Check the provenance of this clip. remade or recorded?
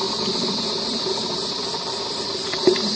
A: recorded